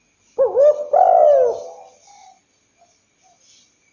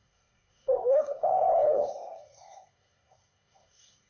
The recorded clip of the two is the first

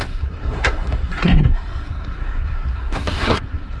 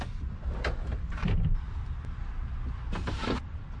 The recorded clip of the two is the second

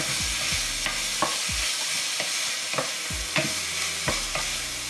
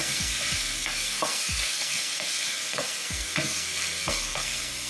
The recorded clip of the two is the first